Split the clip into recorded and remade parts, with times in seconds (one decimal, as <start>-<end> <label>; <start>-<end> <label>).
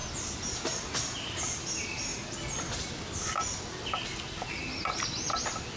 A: 0.0-5.8 recorded